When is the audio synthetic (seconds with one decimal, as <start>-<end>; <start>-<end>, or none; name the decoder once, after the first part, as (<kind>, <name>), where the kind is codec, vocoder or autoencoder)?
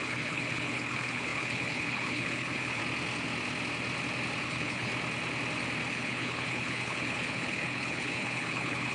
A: 0.0-2.8 (codec, HILCodec); 4.4-4.9; 5.9-8.9